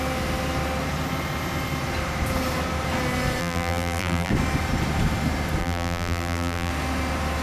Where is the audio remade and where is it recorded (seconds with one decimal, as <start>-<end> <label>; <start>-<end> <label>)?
0.0-3.4 recorded; 3.4-4.3 remade; 4.3-5.6 recorded; 5.6-6.7 remade; 6.7-7.4 recorded